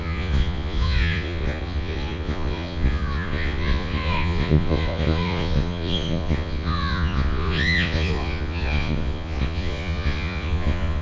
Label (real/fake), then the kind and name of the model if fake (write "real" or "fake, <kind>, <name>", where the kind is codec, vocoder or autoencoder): fake, vocoder, Vocos